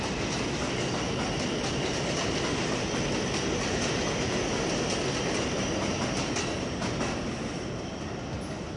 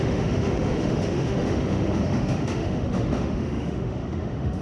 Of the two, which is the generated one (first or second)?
second